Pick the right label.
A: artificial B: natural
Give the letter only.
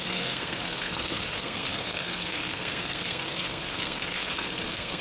A